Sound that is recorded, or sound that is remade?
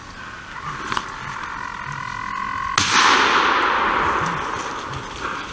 recorded